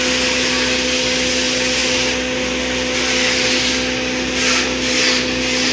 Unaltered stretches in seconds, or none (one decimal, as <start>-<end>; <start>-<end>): 0.0-5.7